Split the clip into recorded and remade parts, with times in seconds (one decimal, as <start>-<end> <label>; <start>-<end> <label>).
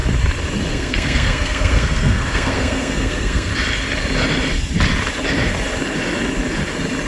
0.0-0.7 recorded; 0.7-3.5 remade; 3.5-7.1 recorded